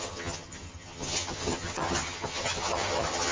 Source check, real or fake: fake